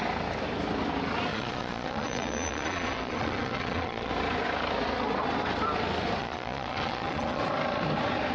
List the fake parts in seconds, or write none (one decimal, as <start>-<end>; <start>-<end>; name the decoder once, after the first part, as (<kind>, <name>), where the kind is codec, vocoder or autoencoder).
1.3-4.1 (vocoder, Vocos); 6.2-7.4